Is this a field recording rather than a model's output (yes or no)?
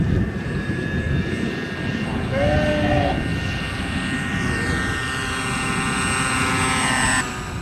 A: yes